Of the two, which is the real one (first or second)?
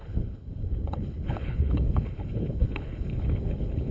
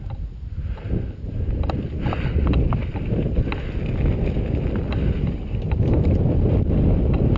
second